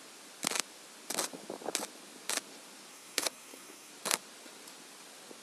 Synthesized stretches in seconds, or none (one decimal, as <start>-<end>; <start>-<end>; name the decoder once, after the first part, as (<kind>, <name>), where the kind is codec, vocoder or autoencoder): 2.9-3.9 (codec, SNAC)